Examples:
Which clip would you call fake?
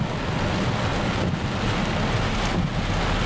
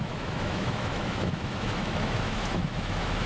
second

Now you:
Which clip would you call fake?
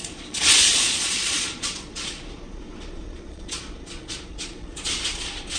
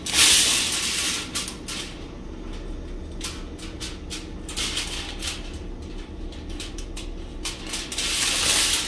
first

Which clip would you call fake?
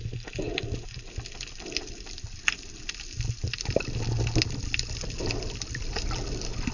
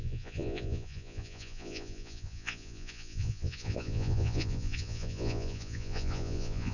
second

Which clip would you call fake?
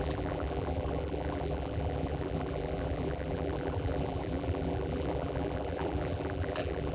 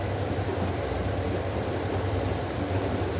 first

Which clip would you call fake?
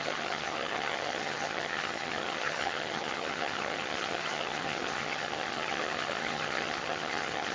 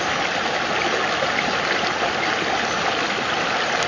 first